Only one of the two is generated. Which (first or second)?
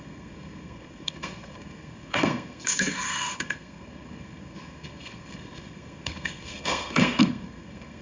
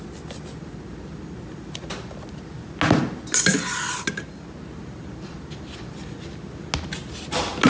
first